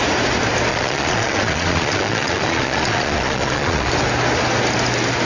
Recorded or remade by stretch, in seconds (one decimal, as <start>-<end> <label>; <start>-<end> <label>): 0.0-0.7 recorded; 0.7-3.9 remade; 3.9-5.3 recorded